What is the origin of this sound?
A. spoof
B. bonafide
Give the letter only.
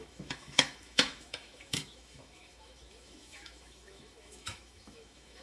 A